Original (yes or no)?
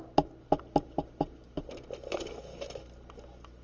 yes